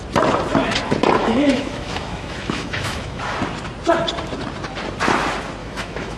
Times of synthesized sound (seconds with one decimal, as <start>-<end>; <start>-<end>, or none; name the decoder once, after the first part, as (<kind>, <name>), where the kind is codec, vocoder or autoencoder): 1.2-3.2 (autoencoder, DAC-VAE); 5.6-6.2

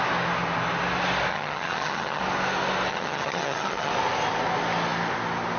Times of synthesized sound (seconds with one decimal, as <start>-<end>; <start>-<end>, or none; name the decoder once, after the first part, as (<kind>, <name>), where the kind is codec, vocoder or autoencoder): 1.3-2.2 (vocoder, HiFi-GAN); 2.9-3.9